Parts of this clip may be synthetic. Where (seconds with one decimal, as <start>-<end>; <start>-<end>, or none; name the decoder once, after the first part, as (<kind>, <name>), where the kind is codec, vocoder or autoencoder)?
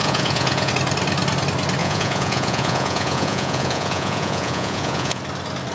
0.0-0.7 (vocoder, Vocos); 1.8-5.2